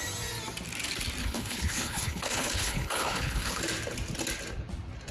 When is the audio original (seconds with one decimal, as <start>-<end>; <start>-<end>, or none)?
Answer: 0.0-1.2; 3.6-5.1